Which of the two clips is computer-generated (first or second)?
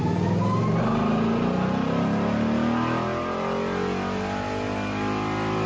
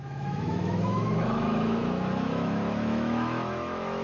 second